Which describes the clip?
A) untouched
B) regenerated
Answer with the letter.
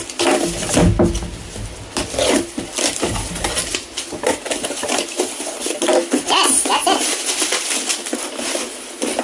A